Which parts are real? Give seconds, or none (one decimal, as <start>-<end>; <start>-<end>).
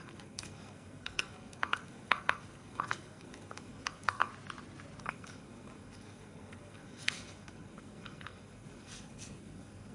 4.3-5.0